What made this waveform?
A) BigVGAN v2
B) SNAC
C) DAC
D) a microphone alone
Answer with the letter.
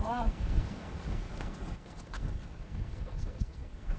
B